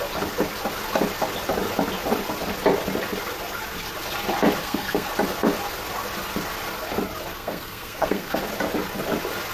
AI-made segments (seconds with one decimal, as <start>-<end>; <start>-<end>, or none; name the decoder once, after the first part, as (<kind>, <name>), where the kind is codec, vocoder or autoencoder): 4.6-5.1 (codec, SNAC); 7.3-8.4